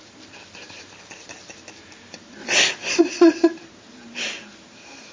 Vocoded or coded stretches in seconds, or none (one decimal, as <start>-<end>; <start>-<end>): 0.0-2.4; 3.0-5.1